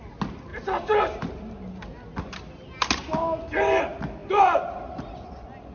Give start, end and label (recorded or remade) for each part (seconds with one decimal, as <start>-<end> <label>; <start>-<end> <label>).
0.0-5.7 recorded